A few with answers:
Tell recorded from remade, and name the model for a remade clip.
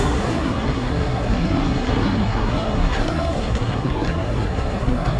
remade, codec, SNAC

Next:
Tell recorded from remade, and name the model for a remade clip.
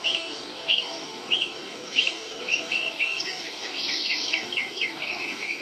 remade, codec, DAC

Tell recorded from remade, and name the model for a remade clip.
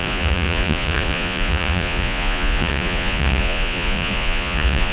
remade, vocoder, Vocos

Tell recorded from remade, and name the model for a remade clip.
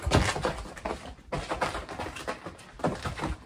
recorded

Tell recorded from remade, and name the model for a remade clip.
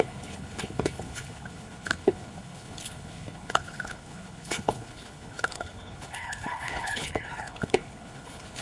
remade, codec, HILCodec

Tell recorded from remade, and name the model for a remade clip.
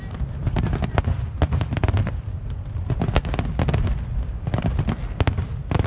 recorded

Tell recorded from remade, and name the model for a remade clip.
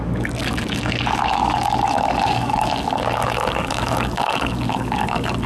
remade, codec, DAC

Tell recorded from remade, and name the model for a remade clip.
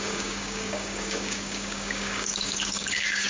remade, codec, DAC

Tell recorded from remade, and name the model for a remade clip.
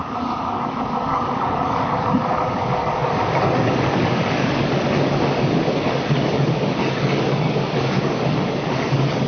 remade, codec, DAC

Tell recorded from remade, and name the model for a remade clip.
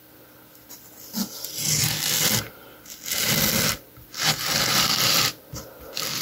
recorded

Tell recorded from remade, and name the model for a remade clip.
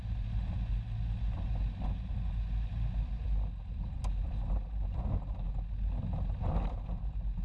recorded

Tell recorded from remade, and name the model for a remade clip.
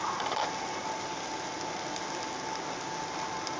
recorded